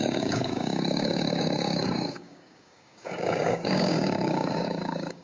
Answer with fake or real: fake